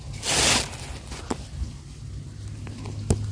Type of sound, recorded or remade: recorded